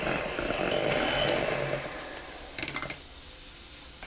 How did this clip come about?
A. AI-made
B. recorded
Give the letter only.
B